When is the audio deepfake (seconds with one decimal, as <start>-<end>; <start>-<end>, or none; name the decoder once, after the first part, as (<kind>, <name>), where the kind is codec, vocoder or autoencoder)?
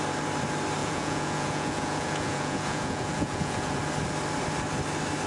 0.8-3.8 (vocoder, Vocos)